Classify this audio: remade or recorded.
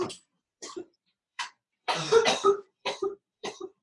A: remade